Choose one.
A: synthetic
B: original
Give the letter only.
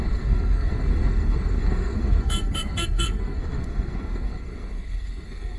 A